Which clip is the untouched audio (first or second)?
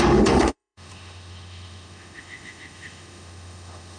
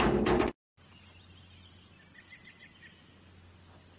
second